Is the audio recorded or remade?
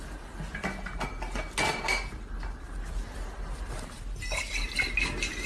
recorded